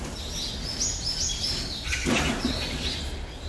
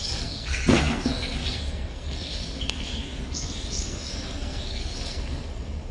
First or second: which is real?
first